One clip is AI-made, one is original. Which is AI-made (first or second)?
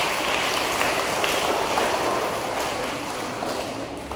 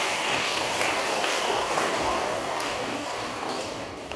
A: second